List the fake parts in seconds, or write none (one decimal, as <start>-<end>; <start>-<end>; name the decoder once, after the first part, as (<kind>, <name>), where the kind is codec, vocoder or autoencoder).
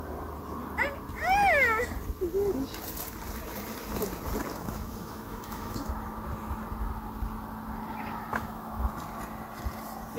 4.5-5.9 (autoencoder, DAC-VAE); 8.3-8.9